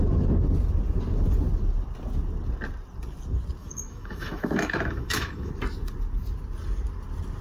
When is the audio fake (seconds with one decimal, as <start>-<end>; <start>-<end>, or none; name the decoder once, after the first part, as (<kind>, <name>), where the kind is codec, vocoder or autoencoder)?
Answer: 3.6-5.5 (autoencoder, DAC-VAE)